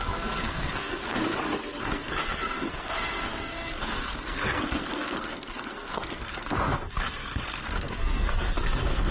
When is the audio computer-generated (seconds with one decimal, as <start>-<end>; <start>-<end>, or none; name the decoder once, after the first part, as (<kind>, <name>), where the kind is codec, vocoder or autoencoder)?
0.0-1.2 (codec, SNAC); 1.8-9.1